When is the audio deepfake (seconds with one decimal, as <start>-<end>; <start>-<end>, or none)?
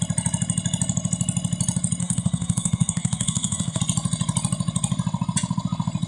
2.0-3.8